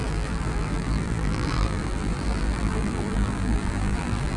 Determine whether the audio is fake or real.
fake